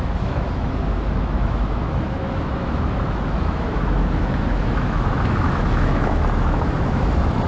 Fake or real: fake